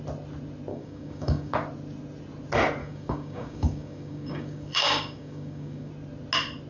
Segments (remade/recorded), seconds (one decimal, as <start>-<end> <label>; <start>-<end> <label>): 0.0-0.7 recorded; 0.7-1.5 remade; 1.5-2.8 recorded; 2.8-5.9 remade; 5.9-6.7 recorded